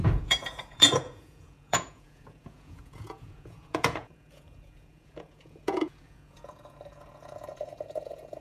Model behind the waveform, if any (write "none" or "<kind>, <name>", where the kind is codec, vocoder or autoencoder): vocoder, Vocos